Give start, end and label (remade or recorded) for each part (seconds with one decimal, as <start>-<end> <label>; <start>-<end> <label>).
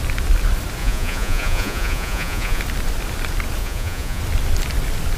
0.0-0.8 recorded; 0.8-2.6 remade; 2.6-3.6 recorded; 3.6-4.2 remade; 4.2-5.2 recorded